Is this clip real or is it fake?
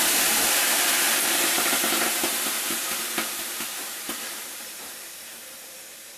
fake